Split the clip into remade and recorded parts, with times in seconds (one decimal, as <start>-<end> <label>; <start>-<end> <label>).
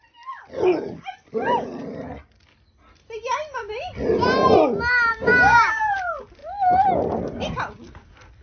0.0-5.1 recorded; 5.1-5.8 remade; 5.8-8.4 recorded